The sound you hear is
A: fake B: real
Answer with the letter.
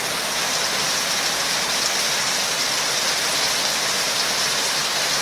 A